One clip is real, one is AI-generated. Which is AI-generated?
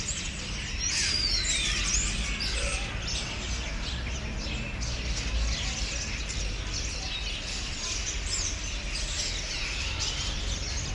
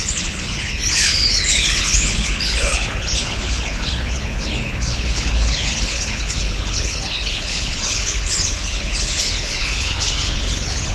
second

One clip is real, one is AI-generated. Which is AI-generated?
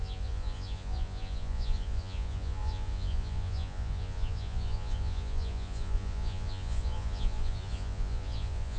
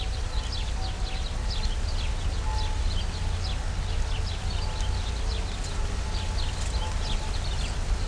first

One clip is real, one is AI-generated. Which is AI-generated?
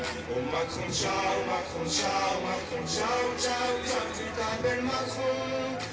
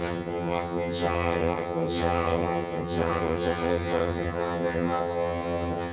second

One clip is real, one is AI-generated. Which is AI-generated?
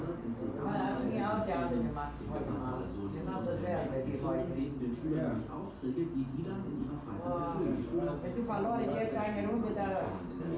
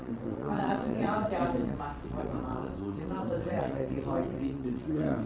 second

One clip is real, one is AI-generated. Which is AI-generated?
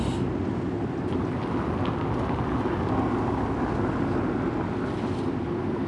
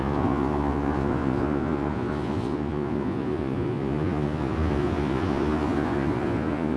second